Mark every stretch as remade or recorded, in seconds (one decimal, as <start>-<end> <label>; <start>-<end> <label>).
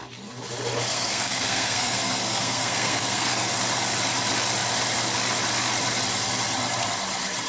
0.0-0.9 recorded; 0.9-3.5 remade; 3.5-7.5 recorded